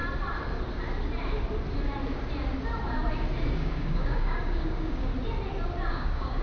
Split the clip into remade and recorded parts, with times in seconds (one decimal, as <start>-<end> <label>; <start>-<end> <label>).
0.0-3.6 recorded; 3.6-5.1 remade; 5.1-5.9 recorded; 5.9-6.4 remade